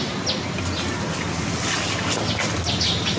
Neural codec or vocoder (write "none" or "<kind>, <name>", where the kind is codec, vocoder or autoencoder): none